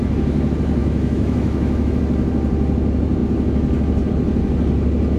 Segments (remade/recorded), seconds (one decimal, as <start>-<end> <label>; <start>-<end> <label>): 0.0-0.8 recorded; 0.8-2.0 remade; 2.0-5.2 recorded